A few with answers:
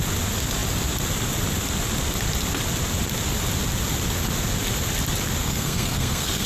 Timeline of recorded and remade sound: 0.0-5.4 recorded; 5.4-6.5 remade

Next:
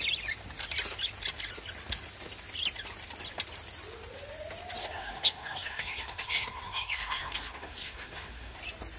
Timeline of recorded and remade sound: 0.0-4.8 recorded; 4.8-8.6 remade; 8.6-9.0 recorded

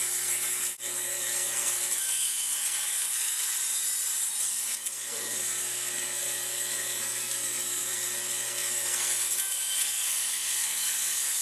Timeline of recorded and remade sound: 0.0-3.5 remade; 3.5-4.4 recorded; 4.4-11.4 remade